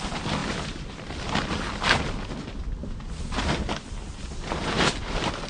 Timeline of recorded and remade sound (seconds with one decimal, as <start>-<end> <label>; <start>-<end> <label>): 0.0-0.4 recorded; 0.4-1.2 remade; 1.2-2.8 recorded; 2.8-3.4 remade; 3.4-5.5 recorded